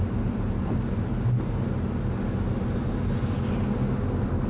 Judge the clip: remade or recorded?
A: recorded